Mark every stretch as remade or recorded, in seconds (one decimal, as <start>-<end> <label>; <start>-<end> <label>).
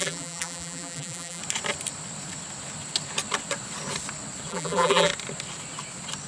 0.0-1.4 remade; 1.4-4.5 recorded; 4.5-5.1 remade; 5.1-6.3 recorded